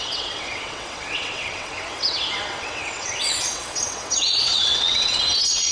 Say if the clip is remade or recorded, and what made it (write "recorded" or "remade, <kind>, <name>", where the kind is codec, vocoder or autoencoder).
remade, vocoder, WaveNeXt